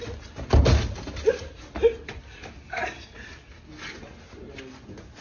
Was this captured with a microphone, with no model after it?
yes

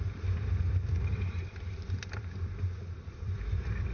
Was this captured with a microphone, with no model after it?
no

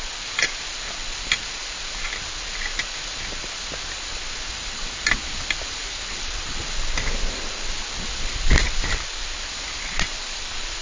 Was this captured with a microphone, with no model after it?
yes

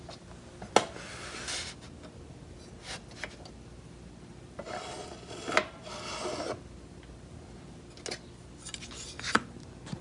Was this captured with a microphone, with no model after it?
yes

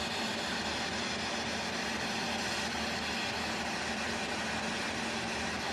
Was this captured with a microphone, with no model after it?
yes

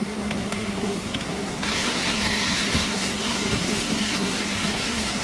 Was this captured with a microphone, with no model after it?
no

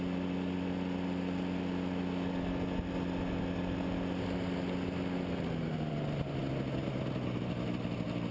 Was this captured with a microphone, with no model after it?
yes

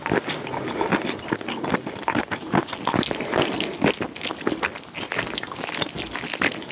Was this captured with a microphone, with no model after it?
yes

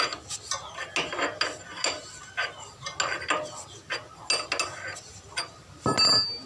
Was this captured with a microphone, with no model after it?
yes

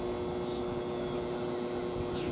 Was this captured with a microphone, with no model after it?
yes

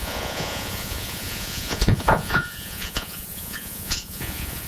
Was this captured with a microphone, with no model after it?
no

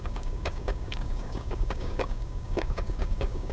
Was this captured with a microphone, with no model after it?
no